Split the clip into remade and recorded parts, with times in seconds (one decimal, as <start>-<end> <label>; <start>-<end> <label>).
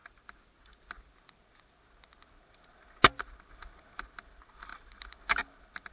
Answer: 0.0-5.9 recorded